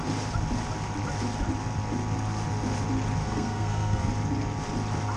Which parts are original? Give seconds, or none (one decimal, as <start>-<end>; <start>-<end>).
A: 0.0-3.2; 4.1-5.2